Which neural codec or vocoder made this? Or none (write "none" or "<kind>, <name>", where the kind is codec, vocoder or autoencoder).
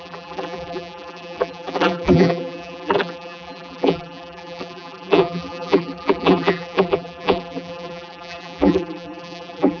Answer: vocoder, BigVGAN v2